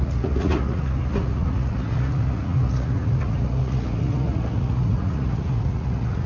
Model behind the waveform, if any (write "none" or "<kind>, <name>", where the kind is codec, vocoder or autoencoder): vocoder, Vocos